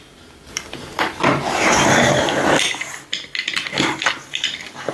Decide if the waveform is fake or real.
real